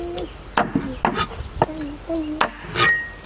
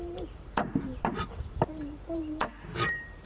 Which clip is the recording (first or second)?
first